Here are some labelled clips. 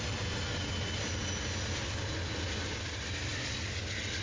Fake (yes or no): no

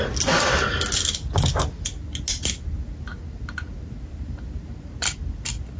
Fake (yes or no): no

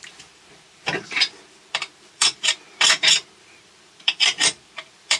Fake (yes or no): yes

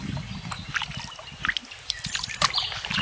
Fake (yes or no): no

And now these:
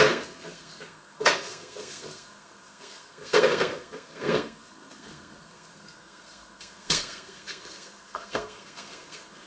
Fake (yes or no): yes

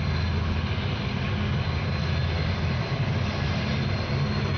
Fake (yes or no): no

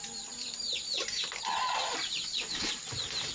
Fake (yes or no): yes